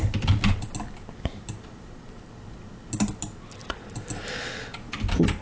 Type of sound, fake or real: real